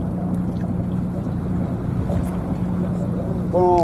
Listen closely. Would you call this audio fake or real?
real